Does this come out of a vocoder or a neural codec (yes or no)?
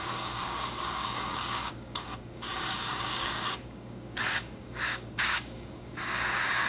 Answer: yes